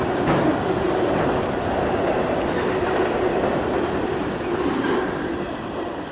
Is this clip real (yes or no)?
yes